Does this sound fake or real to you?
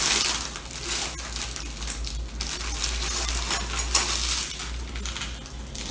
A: real